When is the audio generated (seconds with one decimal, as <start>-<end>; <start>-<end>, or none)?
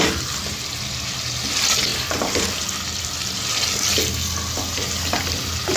none